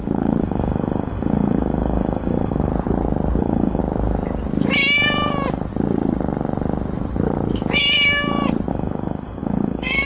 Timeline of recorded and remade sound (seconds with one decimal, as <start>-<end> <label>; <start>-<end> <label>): 0.0-2.7 remade; 2.7-3.4 recorded; 3.4-3.8 remade; 3.8-8.7 recorded; 8.7-10.1 remade